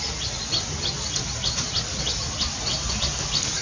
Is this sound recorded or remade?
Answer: recorded